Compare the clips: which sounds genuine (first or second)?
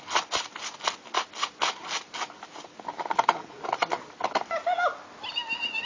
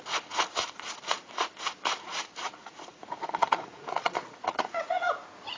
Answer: first